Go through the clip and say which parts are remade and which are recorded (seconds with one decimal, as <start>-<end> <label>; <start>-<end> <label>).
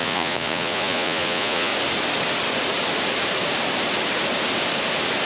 0.0-1.7 remade; 1.7-5.3 recorded